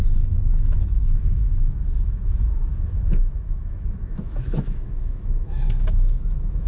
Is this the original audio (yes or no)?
no